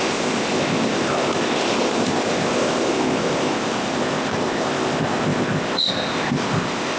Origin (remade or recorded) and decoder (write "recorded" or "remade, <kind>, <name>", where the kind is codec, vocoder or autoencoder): remade, codec, ZipCodec